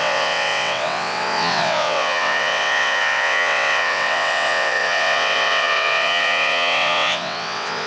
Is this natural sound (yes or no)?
no